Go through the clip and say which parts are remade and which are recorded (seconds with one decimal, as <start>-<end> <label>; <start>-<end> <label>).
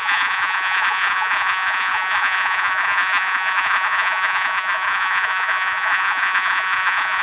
0.0-7.2 remade